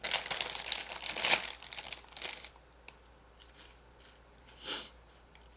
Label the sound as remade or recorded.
recorded